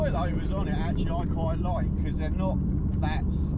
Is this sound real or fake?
real